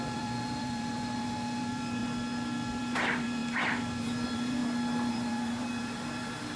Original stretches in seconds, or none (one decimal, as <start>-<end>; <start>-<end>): 2.0-2.8; 4.6-5.1